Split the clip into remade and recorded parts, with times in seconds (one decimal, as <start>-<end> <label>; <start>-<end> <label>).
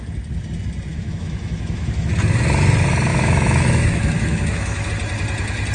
0.0-0.9 recorded; 0.9-2.1 remade; 2.1-3.1 recorded; 3.1-4.9 remade; 4.9-5.7 recorded